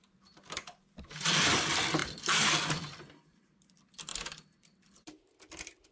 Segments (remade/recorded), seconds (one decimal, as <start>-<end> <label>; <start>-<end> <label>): 0.0-5.9 recorded